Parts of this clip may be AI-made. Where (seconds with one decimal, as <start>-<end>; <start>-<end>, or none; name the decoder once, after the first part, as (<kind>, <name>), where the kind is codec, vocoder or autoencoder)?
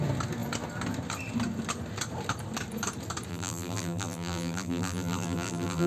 3.3-5.9 (vocoder, BigVGAN v2)